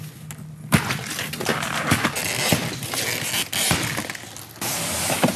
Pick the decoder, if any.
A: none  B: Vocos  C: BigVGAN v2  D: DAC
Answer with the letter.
A